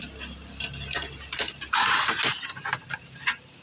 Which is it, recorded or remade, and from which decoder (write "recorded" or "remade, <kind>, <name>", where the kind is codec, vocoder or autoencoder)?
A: recorded